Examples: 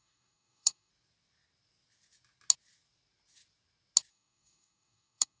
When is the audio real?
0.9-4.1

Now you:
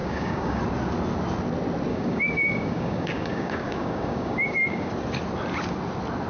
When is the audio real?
0.6-1.9; 4.9-6.3

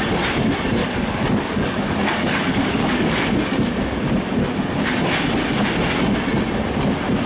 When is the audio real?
0.0-0.8; 3.3-7.3

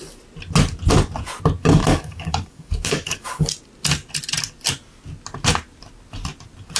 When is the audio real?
0.0-1.6; 3.5-6.8

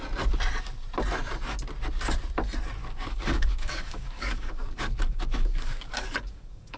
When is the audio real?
0.0-2.8

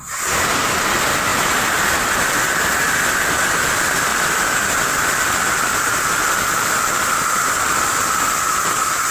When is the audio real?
0.0-9.1

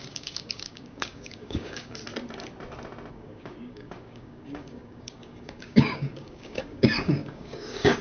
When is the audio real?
2.0-3.1